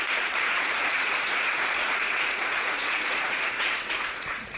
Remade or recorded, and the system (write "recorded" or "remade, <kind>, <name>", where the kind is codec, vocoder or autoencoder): remade, vocoder, Vocos